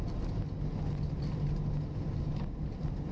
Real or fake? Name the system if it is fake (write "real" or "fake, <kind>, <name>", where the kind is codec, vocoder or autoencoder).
real